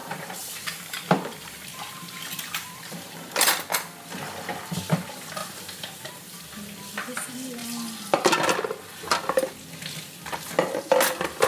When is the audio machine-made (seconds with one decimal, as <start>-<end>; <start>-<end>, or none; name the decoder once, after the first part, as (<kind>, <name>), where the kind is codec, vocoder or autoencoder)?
0.0-3.3 (vocoder, BigVGAN v2); 5.4-6.4